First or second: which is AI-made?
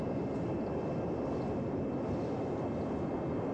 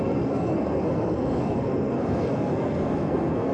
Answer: second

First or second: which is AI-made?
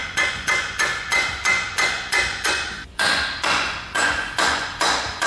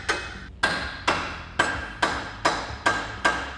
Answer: first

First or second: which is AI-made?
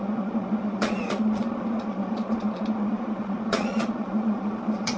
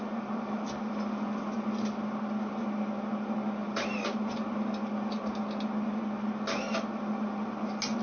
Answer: first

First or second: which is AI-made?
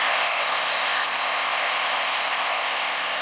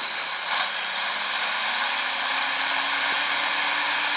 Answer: first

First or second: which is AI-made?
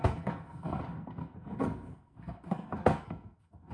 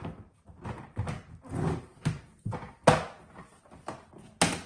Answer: first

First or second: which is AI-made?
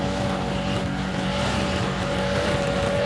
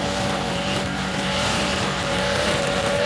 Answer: second